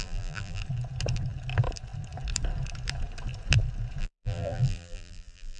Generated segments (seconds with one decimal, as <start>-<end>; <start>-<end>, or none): 0.0-0.6; 4.0-5.6